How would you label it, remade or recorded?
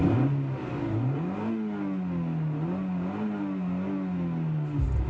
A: recorded